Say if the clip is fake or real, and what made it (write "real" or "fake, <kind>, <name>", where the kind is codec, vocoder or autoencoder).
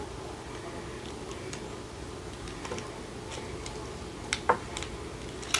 real